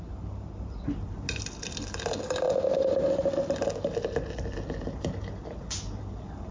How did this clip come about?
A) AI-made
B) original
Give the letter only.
B